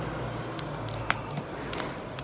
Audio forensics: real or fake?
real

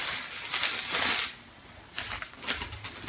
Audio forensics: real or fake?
real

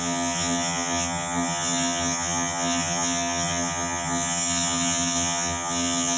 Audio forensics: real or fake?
fake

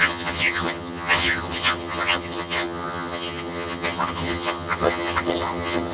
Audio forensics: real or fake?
fake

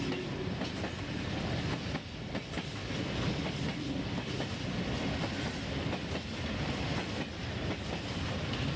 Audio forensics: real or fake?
real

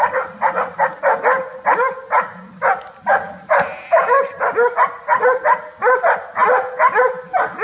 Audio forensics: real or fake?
real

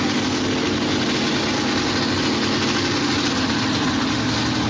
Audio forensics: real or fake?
real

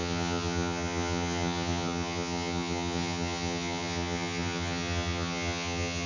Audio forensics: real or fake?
fake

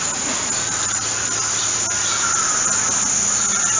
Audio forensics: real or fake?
real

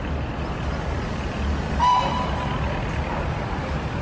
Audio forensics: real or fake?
real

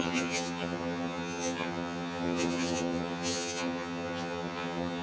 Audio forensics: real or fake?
fake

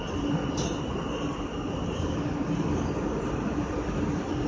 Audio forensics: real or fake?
real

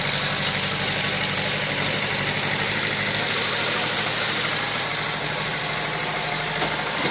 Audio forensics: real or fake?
real